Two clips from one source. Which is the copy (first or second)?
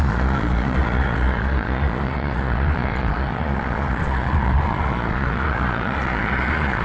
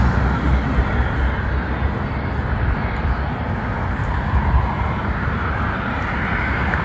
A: first